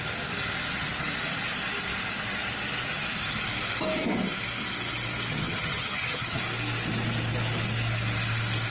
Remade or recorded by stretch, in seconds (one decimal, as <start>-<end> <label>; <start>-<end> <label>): 0.0-5.3 recorded; 5.3-6.4 remade; 6.4-8.7 recorded